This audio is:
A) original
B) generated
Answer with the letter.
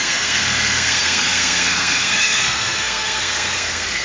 B